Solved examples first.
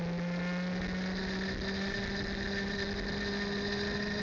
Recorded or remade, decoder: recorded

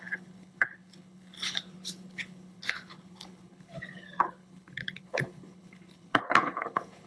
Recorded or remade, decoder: remade, codec, HILCodec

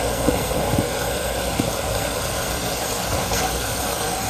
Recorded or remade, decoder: remade, codec, SNAC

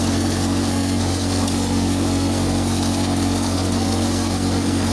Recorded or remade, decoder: remade, codec, SNAC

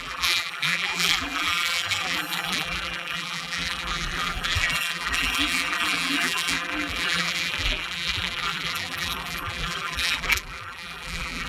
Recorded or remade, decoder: remade, vocoder, BigVGAN v2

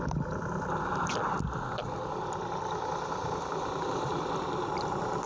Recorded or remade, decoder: recorded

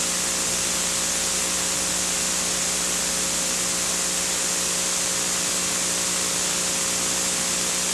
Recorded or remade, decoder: recorded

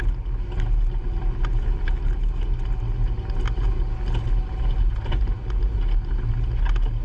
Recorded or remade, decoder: recorded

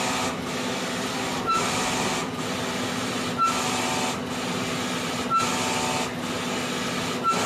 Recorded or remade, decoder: recorded